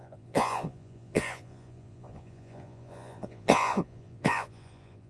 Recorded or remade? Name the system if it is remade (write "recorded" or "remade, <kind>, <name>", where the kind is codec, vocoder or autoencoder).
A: remade, vocoder, Vocos